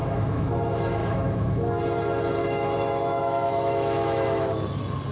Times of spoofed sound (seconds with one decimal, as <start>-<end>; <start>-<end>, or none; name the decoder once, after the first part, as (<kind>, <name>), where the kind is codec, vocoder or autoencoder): 0.0-0.5 (autoencoder, DAC-VAE); 1.0-1.8; 2.4-4.5